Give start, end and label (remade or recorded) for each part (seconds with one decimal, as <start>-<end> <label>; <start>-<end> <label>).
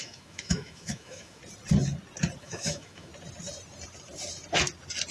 0.0-1.4 remade; 1.4-2.4 recorded; 2.4-3.1 remade; 3.1-5.1 recorded